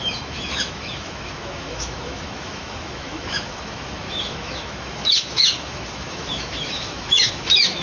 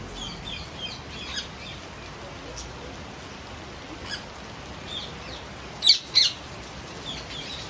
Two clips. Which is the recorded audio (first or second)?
second